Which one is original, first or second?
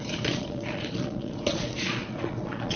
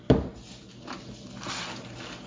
second